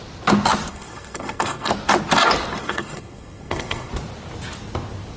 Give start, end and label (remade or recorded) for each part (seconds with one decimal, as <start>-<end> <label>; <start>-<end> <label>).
0.0-0.7 recorded; 0.7-1.7 remade; 1.7-2.6 recorded; 2.6-3.9 remade; 3.9-5.2 recorded